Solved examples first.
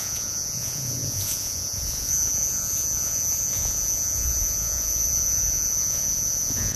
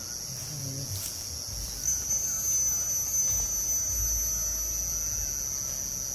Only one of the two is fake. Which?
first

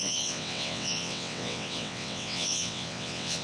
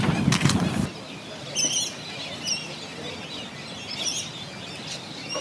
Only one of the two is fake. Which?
first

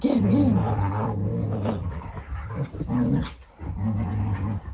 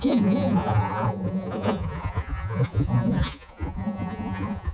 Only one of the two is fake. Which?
second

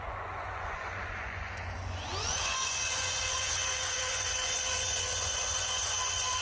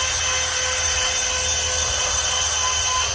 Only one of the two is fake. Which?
first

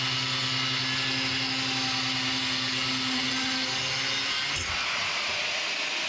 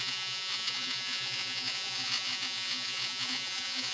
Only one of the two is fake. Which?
second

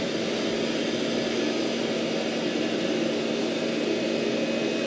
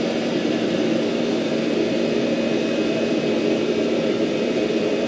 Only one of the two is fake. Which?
second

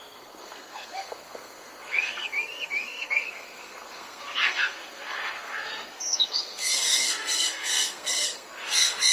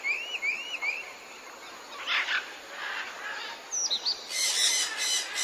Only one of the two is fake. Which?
first